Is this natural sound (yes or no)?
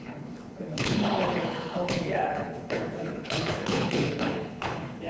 no